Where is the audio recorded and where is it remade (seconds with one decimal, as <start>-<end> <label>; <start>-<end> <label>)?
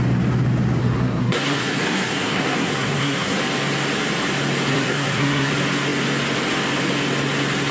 0.0-0.8 recorded; 0.8-3.4 remade; 3.4-4.7 recorded; 4.7-5.5 remade; 5.5-7.7 recorded